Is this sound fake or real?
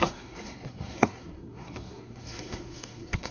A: fake